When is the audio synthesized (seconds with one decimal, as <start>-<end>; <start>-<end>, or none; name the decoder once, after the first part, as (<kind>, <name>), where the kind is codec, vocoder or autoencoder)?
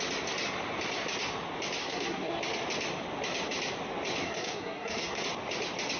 1.8-2.3 (codec, SNAC); 4.2-5.2